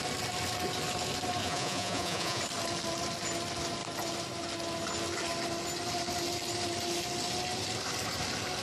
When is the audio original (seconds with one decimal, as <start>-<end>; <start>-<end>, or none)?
0.0-1.4; 2.4-8.6